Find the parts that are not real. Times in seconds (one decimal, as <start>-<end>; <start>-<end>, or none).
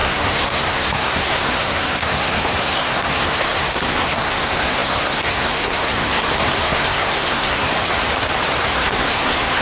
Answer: 0.0-7.7; 8.7-9.6